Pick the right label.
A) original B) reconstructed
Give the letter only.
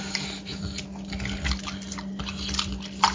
A